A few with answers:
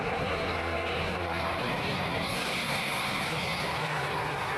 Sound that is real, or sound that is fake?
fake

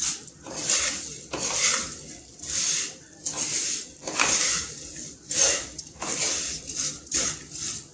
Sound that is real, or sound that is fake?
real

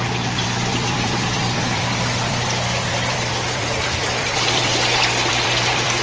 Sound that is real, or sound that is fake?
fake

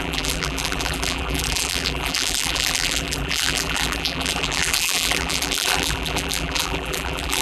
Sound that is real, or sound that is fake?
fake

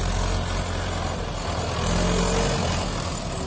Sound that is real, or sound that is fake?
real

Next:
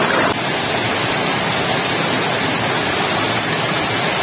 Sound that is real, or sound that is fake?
real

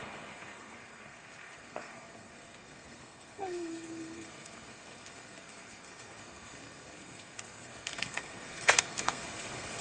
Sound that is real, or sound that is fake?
fake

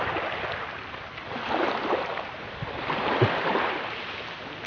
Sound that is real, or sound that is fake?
real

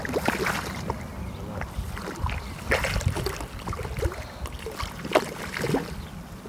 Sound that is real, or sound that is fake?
real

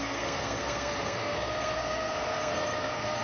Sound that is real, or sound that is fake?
fake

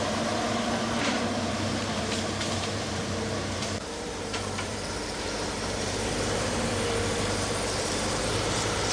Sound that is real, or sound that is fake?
fake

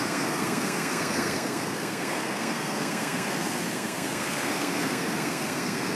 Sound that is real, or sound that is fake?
fake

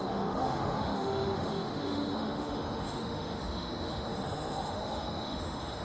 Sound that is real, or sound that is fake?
fake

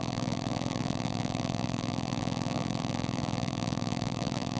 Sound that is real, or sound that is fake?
fake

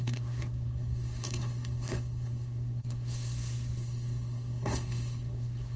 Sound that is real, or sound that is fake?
fake